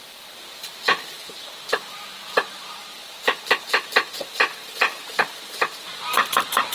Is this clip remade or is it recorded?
remade